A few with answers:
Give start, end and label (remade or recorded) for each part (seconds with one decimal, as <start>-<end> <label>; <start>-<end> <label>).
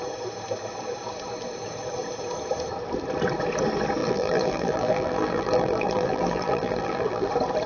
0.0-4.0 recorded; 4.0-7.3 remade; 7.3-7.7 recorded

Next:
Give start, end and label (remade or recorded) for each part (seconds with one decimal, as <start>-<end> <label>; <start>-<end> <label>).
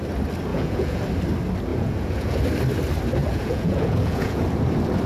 0.0-0.5 recorded; 0.5-1.0 remade; 1.0-1.7 recorded; 1.7-2.4 remade; 2.4-3.2 recorded; 3.2-4.4 remade; 4.4-5.1 recorded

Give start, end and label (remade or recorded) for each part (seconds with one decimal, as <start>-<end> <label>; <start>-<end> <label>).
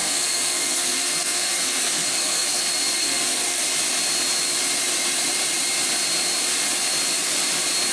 0.0-2.6 remade; 2.6-3.0 recorded; 3.0-3.6 remade; 3.6-7.9 recorded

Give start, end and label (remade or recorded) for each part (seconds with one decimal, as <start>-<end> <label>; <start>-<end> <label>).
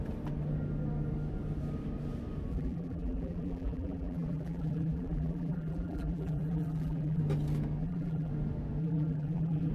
0.0-2.5 recorded; 2.5-7.2 remade; 7.2-7.8 recorded; 7.8-8.3 remade; 8.3-8.8 recorded; 8.8-9.7 remade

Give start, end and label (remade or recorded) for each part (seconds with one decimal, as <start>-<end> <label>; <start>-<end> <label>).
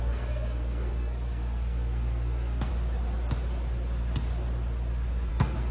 0.0-2.7 remade; 2.7-5.3 recorded; 5.3-5.7 remade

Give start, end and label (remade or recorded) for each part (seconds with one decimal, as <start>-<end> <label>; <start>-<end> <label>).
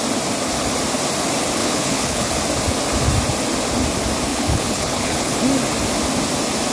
0.0-1.6 recorded; 1.6-2.3 remade; 2.3-4.3 recorded; 4.3-5.4 remade; 5.4-6.7 recorded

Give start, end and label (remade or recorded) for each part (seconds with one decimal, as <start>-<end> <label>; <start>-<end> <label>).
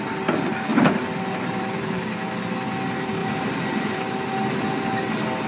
0.0-0.7 recorded; 0.7-2.0 remade; 2.0-3.2 recorded; 3.2-4.0 remade; 4.0-5.5 recorded